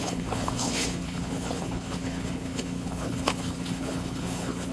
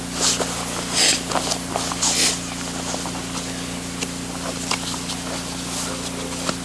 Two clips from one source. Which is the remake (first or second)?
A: first